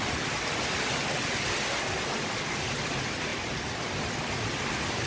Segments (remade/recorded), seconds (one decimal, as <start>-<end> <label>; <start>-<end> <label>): 0.0-5.1 recorded